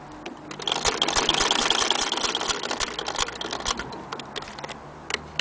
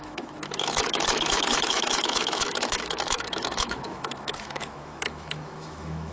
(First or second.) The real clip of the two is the first